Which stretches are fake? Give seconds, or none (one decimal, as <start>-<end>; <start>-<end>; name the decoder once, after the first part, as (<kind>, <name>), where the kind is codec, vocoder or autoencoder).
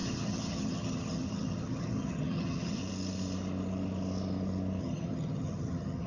0.0-2.8 (vocoder, HiFi-GAN); 4.8-6.1